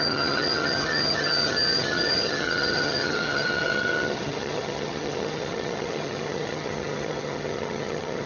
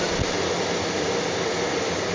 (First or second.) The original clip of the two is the second